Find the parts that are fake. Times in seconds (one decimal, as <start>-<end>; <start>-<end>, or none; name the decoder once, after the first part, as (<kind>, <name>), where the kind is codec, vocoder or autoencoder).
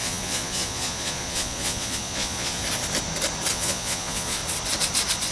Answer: 0.0-2.6 (vocoder, Vocos); 3.5-4.4